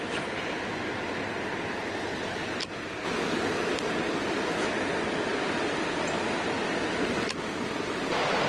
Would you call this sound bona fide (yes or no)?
yes